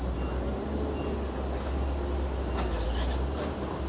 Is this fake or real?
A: real